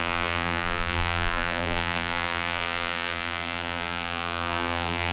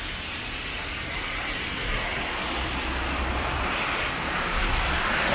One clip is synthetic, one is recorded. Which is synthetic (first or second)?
first